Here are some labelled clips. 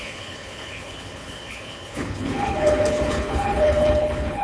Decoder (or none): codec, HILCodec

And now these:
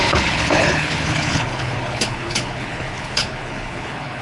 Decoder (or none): codec, HILCodec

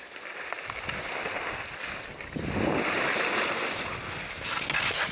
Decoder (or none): none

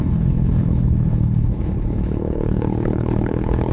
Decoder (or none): codec, HILCodec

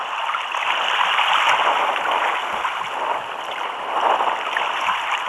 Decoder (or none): none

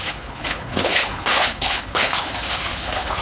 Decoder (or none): codec, HILCodec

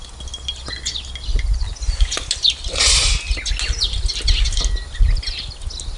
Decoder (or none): none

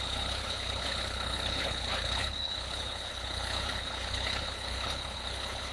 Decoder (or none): codec, HILCodec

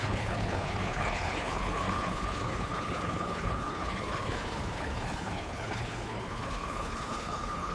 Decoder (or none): codec, HILCodec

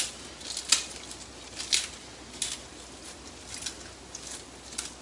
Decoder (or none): none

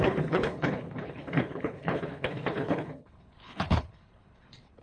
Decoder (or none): codec, HILCodec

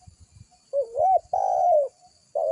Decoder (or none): none